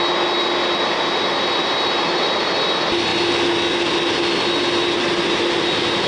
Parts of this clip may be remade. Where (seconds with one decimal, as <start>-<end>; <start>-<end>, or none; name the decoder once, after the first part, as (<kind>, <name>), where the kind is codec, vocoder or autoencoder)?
none